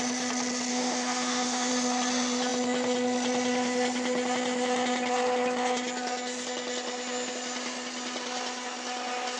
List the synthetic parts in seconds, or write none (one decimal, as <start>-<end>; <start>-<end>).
0.7-1.7